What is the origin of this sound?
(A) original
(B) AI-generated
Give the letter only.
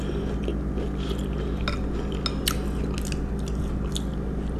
A